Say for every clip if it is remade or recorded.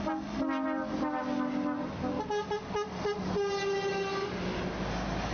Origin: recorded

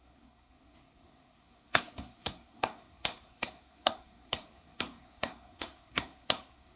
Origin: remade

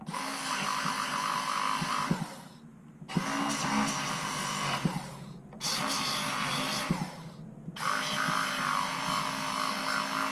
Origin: recorded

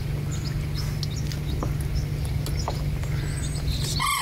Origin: recorded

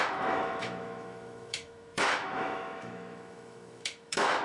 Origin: remade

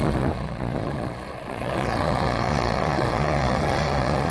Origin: remade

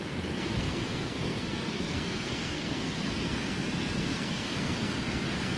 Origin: remade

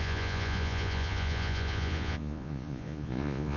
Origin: remade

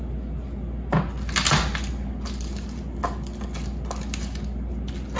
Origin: recorded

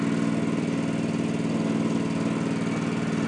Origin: recorded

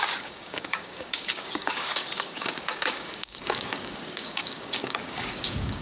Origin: remade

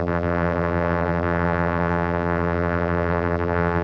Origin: remade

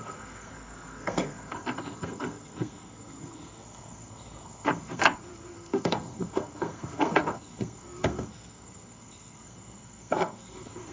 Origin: remade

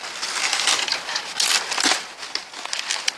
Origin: recorded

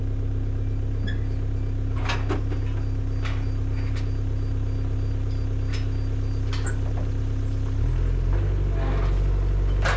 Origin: recorded